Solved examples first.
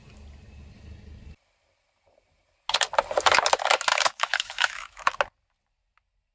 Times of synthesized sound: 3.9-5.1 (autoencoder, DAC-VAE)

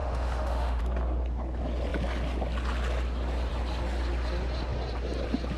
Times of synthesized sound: 0.0-0.8 (autoencoder, DAC-VAE)

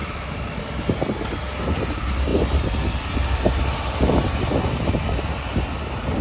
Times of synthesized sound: 0.0-0.6 (autoencoder, DAC-VAE)

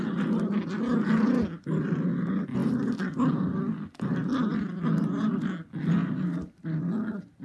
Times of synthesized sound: none

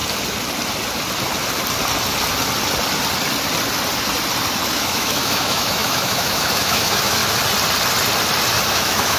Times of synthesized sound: 4.7-7.2 (autoencoder, DAC-VAE); 8.7-9.2